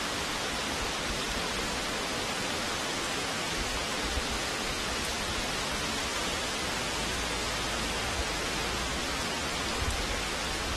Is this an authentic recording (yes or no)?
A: yes